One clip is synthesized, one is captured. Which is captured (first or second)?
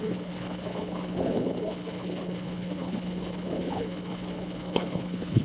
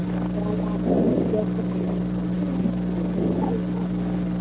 second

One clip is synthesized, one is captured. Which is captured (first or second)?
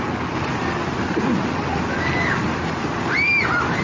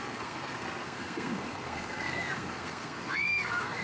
first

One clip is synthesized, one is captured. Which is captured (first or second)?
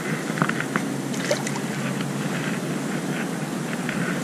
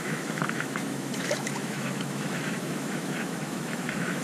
first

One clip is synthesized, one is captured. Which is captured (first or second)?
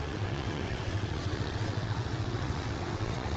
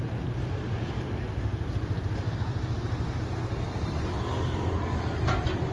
second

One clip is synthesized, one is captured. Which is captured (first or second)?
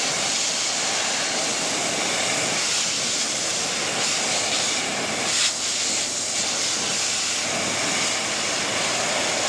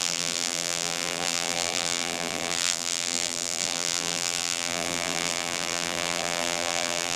first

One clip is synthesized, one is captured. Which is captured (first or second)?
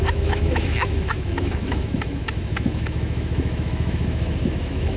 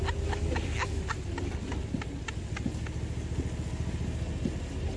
second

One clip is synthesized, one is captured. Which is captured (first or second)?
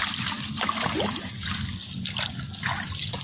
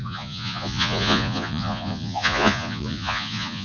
first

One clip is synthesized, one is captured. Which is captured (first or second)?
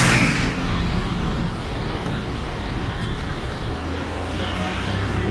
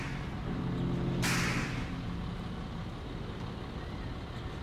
second